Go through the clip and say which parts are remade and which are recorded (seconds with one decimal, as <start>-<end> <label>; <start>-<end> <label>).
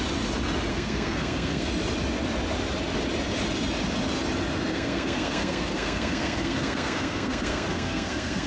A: 0.0-0.7 recorded; 0.7-1.7 remade; 1.7-4.7 recorded; 4.7-8.5 remade